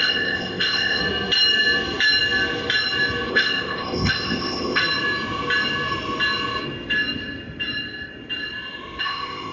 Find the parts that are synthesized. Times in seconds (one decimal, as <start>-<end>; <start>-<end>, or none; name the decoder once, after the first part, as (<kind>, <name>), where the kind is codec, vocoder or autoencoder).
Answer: 0.0-1.0 (codec, ZipCodec); 3.3-4.8; 9.0-9.5